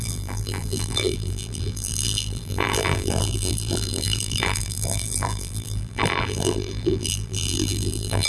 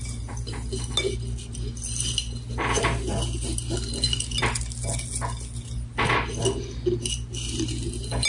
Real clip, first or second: second